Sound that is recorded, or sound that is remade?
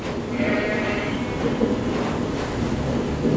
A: recorded